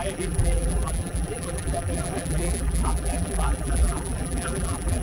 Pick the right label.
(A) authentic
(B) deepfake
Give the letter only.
B